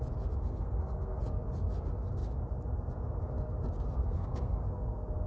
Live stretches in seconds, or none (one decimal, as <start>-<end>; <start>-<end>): 0.0-0.4; 1.2-4.0; 4.5-5.3